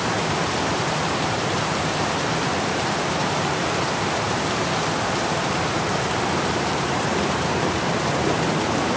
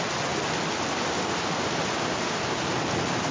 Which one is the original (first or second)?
second